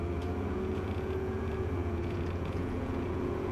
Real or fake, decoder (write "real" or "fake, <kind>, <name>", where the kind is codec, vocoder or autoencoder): fake, vocoder, Vocos